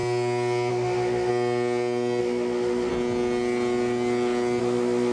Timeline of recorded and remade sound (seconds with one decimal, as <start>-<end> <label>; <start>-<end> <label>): 0.0-0.7 recorded; 0.7-1.3 remade; 1.3-2.2 recorded; 2.2-2.9 remade; 2.9-4.6 recorded; 4.6-5.1 remade